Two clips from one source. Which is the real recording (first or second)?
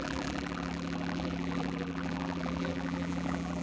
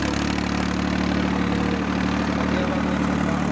second